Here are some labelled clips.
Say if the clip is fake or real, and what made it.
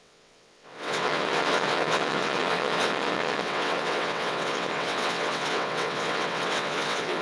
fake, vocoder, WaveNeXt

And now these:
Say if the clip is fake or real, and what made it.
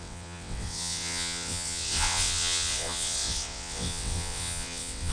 fake, vocoder, WaveNeXt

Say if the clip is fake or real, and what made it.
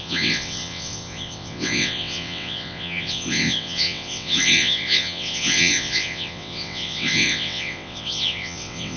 fake, vocoder, WaveNeXt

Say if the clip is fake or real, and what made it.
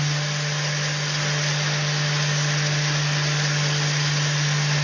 real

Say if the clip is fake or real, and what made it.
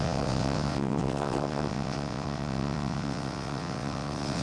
fake, vocoder, WaveNeXt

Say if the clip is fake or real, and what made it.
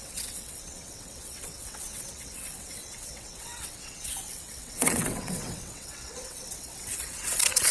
fake, vocoder, WaveNeXt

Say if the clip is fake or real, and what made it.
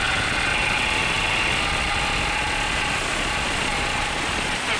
real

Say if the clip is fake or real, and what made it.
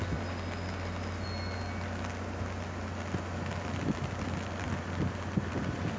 real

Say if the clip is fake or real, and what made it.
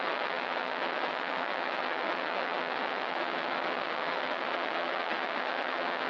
fake, vocoder, WaveNeXt